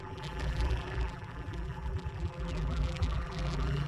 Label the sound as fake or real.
fake